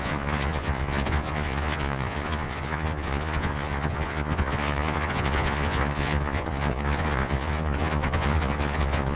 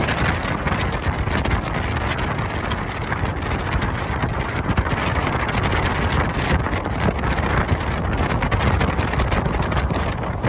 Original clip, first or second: second